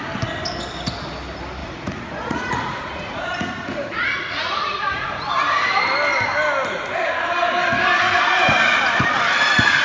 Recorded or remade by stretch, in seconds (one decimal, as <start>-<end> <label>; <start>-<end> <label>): 0.0-1.6 recorded; 1.6-5.3 remade; 5.3-9.8 recorded